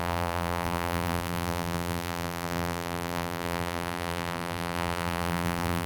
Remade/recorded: remade